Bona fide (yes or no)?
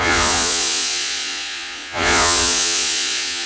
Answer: no